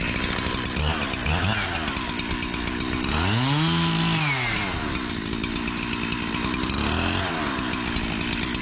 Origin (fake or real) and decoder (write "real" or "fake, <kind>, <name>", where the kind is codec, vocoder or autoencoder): real